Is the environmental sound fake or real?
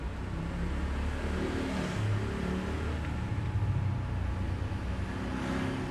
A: real